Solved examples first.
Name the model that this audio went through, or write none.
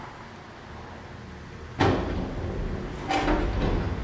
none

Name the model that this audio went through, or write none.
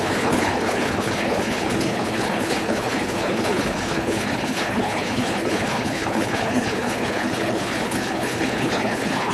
codec, HILCodec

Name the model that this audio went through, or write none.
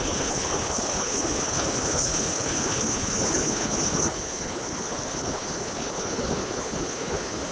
codec, HILCodec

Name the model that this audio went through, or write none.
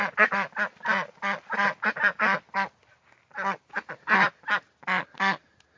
none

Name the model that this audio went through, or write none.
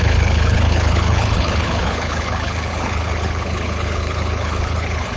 codec, HILCodec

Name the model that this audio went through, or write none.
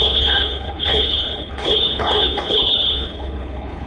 codec, HILCodec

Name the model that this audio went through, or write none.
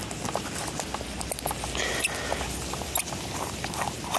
none